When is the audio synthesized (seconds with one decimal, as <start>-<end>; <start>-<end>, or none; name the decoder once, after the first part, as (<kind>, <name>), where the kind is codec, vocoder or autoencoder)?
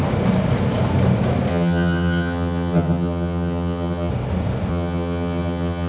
1.5-4.1 (vocoder, HiFi-GAN); 4.7-5.9